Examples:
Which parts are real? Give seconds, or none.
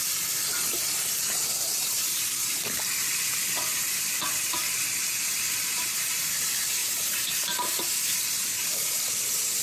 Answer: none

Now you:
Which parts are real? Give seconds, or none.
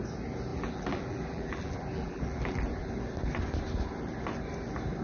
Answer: 0.0-0.5; 2.9-5.0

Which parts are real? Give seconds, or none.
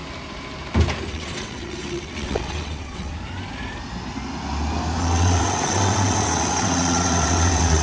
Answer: 0.0-1.1; 3.1-5.0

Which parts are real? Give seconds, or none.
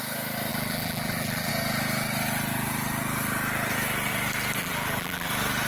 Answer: 0.0-0.5; 1.5-4.6; 5.3-5.7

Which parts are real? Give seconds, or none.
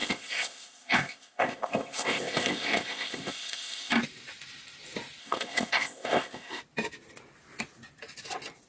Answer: 3.9-5.2; 6.6-8.7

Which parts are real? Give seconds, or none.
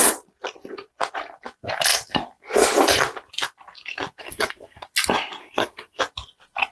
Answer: 0.0-4.2; 4.9-5.4; 6.0-6.7